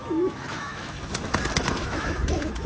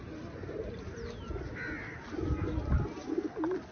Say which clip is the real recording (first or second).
second